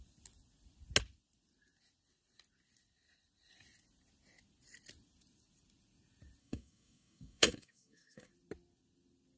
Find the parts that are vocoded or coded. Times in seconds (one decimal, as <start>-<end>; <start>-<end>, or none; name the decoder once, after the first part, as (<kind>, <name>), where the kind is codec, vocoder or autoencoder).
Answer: 6.4-8.3 (codec, DAC)